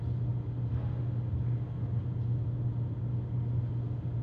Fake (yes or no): no